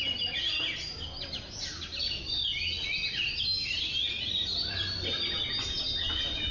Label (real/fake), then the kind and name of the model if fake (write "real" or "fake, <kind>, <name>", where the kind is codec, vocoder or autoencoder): real